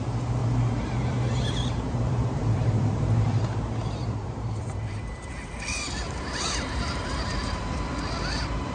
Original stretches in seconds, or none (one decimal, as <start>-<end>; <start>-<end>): 0.0-0.4; 5.5-6.0; 7.6-8.7